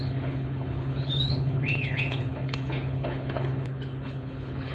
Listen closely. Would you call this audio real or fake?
fake